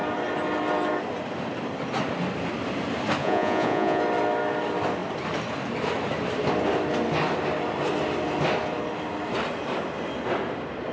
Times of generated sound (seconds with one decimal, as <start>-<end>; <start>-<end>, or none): 3.2-4.0